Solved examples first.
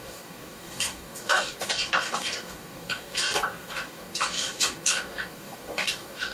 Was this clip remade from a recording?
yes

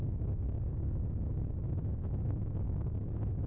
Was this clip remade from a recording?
yes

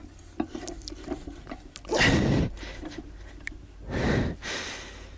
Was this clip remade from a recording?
no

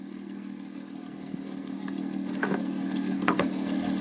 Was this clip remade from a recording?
yes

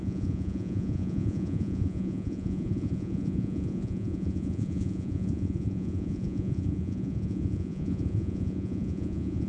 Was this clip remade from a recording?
yes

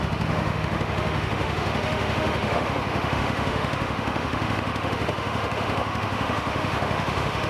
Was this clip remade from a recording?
yes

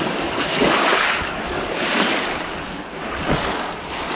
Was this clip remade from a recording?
yes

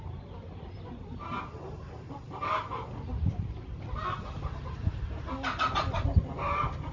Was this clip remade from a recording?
no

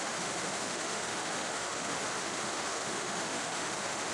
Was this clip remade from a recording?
yes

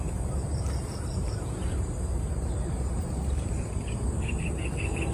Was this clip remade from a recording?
yes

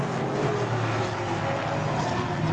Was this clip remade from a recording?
no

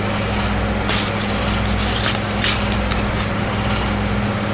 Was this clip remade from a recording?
no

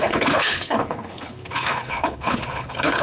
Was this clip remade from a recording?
yes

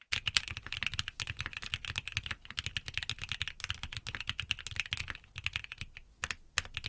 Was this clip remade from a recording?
no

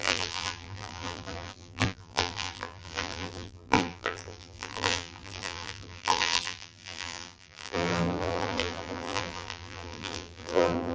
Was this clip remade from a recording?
yes